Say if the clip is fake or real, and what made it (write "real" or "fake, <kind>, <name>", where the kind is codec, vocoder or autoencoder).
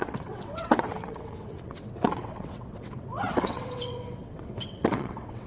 fake, vocoder, WaveNeXt